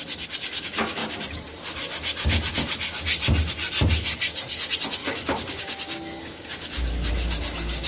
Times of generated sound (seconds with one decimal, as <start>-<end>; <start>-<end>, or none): 5.0-7.1